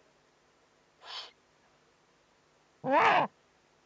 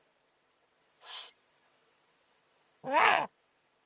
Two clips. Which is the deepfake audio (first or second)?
second